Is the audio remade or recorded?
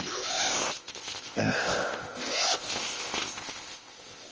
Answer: remade